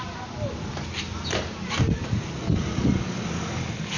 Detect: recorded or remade recorded